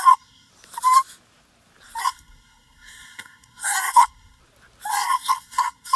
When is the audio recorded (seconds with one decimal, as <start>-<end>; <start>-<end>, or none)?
0.5-2.0; 4.4-4.9